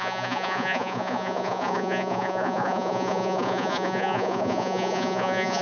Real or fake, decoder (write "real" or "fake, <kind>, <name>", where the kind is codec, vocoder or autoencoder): fake, vocoder, Vocos